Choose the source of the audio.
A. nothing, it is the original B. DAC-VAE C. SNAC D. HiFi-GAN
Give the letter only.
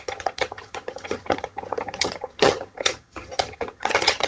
D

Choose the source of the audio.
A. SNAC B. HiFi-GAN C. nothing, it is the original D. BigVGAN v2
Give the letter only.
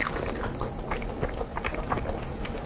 C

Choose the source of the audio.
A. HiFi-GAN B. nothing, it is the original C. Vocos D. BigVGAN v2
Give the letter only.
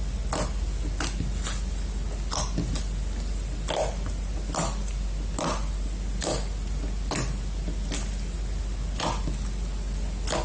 B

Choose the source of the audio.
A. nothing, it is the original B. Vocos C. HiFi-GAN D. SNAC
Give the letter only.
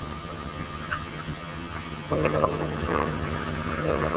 C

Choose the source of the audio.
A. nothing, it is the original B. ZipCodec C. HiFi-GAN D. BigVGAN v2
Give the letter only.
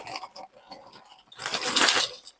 A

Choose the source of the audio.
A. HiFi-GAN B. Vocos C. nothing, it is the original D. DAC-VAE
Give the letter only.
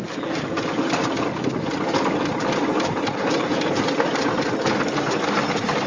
C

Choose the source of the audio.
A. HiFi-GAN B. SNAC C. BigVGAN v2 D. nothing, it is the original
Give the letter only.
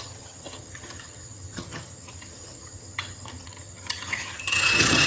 A